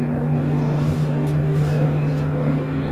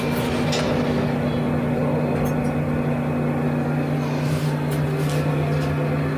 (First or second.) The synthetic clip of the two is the first